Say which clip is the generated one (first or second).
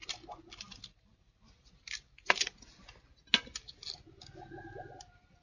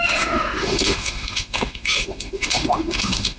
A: second